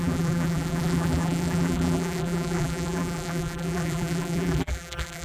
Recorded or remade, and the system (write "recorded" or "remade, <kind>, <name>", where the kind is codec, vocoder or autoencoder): remade, vocoder, BigVGAN v2